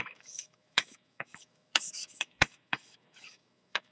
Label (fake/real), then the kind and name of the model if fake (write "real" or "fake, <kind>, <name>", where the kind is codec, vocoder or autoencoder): fake, autoencoder, DAC-VAE